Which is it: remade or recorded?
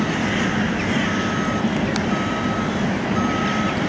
recorded